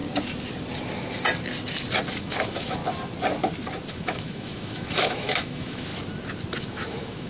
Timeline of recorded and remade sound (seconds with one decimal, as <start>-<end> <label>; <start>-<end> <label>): 0.0-2.2 recorded; 2.2-2.8 remade; 2.8-3.9 recorded; 3.9-5.9 remade; 5.9-6.6 recorded; 6.6-7.3 remade